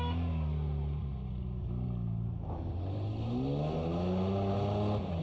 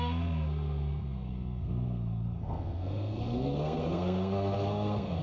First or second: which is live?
first